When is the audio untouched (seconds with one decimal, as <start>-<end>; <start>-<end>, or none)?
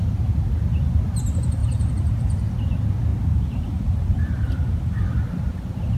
0.0-1.6; 2.5-3.1; 5.0-6.0